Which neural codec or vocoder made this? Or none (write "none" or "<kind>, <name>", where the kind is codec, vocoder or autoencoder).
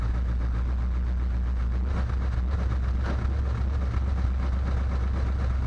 none